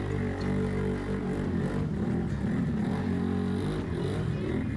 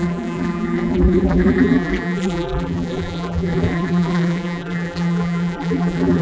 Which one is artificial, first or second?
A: second